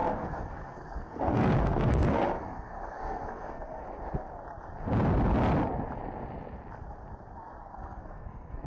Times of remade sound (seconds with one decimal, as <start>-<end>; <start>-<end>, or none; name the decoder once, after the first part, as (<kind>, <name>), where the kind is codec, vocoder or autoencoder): 0.0-3.8 (codec, SNAC); 7.6-8.7